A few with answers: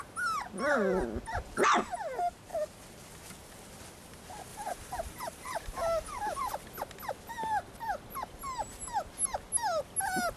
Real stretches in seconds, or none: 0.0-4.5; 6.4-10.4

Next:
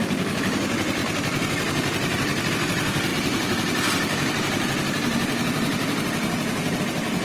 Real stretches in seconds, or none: 1.0-2.5

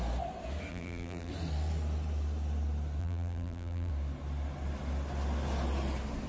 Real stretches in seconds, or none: 0.0-0.7; 1.3-3.0; 3.9-6.3

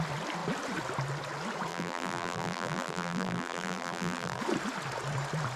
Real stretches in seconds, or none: 0.0-1.7; 4.4-5.6

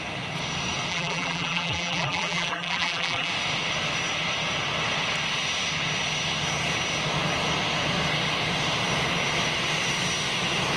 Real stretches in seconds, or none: 0.0-0.9; 3.3-10.8